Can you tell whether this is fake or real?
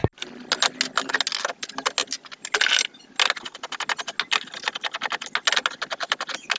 real